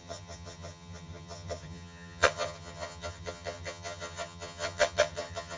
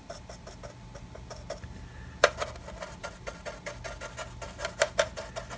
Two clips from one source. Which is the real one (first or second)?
second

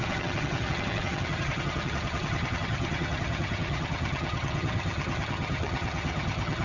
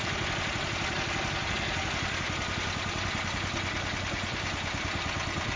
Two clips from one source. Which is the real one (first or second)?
second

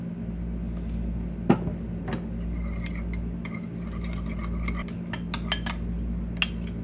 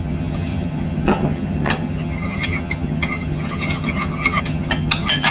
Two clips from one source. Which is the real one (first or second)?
first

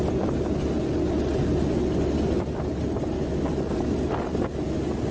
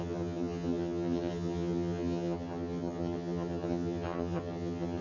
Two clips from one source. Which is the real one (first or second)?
first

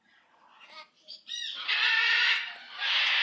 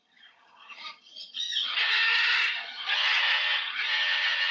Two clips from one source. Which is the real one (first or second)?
first